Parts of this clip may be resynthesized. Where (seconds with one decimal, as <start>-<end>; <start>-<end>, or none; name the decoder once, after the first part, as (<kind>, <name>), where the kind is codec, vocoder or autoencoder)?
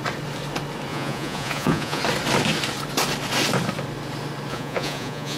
0.9-2.0 (vocoder, Vocos); 4.5-5.4